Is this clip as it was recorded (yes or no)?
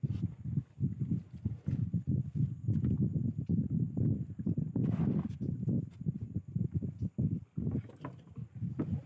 yes